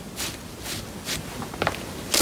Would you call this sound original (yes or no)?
yes